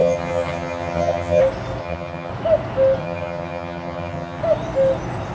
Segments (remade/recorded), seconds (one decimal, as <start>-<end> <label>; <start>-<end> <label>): 0.0-1.4 remade; 1.4-1.8 recorded; 1.8-2.3 remade; 2.3-3.0 recorded; 3.0-4.4 remade; 4.4-5.3 recorded